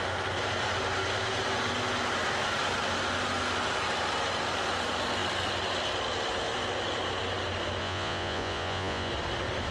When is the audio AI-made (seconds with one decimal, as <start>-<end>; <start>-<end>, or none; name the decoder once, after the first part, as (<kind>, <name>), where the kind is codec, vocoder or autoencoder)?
7.8-9.1 (vocoder, Vocos)

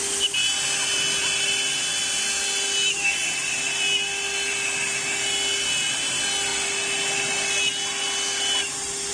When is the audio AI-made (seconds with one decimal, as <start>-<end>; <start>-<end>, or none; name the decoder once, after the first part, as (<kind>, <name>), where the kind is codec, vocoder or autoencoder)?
none

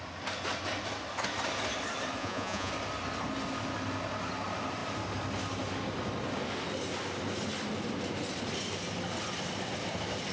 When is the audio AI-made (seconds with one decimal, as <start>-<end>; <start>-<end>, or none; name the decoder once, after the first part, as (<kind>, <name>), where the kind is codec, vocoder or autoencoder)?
2.2-2.7 (vocoder, Vocos)

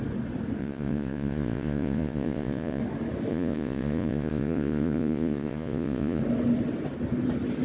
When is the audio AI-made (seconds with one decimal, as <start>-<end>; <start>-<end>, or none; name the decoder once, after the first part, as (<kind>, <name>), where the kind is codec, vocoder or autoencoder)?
0.6-2.8 (vocoder, Vocos); 3.3-6.2

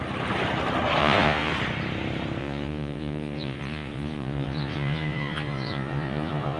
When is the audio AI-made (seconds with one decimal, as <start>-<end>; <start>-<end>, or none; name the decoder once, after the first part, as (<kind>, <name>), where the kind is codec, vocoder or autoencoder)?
1.0-1.5 (vocoder, Vocos); 2.4-6.6

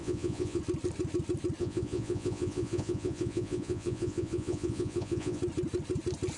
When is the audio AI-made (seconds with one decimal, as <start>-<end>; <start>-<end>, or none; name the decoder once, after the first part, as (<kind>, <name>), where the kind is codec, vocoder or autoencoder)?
0.0-0.6 (vocoder, Vocos); 1.6-5.4

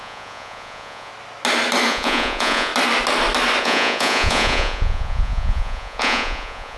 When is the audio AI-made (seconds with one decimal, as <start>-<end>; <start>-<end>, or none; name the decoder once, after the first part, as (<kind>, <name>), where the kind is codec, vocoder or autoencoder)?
0.0-1.1 (vocoder, Vocos); 1.9-2.7; 3.6-6.8